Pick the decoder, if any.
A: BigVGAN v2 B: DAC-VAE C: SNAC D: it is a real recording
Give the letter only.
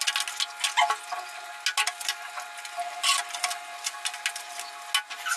D